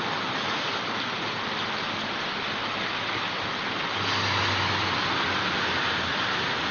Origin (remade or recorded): recorded